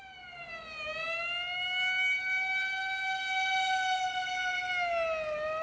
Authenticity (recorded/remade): recorded